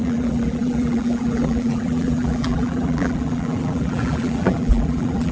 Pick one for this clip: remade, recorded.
remade